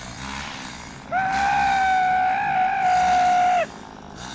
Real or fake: real